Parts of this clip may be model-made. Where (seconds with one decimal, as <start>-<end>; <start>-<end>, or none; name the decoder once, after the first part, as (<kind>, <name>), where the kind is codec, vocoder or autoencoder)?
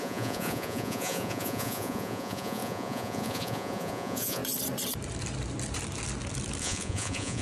0.0-4.4 (vocoder, Vocos); 6.6-7.4